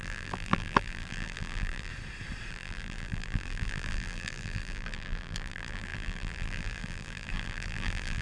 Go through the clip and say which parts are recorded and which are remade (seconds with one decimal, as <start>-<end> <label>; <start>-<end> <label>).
0.0-1.9 remade; 1.9-2.5 recorded; 2.5-8.2 remade